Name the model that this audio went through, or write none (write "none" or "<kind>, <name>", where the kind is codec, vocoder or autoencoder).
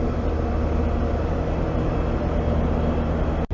none